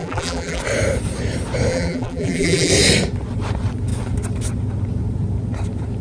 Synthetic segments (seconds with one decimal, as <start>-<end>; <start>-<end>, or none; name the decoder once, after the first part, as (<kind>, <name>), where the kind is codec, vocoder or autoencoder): 0.0-0.6 (vocoder, BigVGAN v2); 1.7-2.7